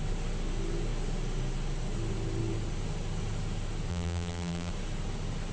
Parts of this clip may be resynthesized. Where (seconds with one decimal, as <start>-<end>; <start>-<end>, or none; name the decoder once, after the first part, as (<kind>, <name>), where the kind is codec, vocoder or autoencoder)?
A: 3.9-4.7 (vocoder, BigVGAN v2)